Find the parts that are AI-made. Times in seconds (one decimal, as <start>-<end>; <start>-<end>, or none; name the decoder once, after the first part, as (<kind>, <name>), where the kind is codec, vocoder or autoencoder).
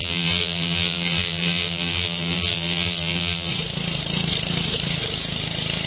0.0-3.5 (vocoder, BigVGAN v2)